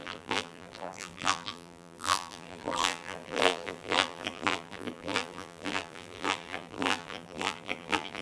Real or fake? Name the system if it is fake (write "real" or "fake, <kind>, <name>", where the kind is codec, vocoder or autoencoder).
fake, vocoder, BigVGAN v2